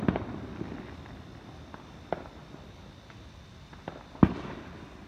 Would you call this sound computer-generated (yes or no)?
no